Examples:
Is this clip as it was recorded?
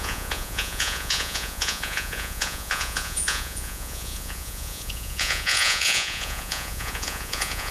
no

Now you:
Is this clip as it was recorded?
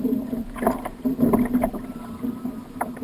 yes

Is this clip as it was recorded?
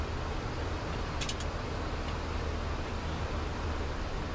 yes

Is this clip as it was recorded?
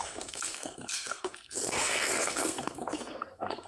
no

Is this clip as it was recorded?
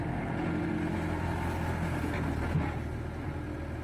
yes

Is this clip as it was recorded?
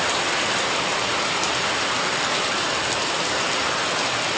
yes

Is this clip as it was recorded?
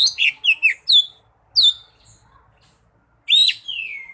yes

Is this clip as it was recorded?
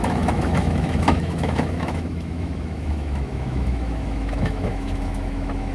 no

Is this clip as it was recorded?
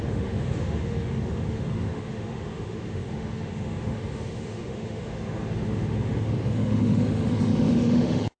no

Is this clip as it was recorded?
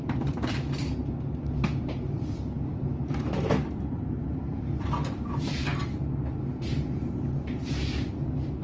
yes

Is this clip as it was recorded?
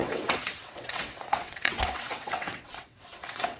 no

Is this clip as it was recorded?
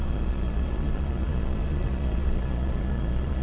no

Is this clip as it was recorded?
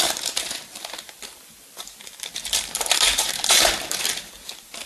no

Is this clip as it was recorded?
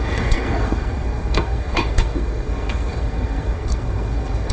no